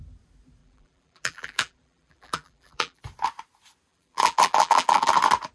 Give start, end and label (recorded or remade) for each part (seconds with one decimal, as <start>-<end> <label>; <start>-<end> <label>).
0.0-0.6 recorded; 0.6-3.0 remade; 3.0-3.9 recorded; 3.9-5.1 remade; 5.1-5.5 recorded